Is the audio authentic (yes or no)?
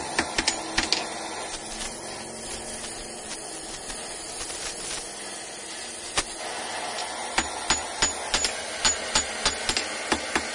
yes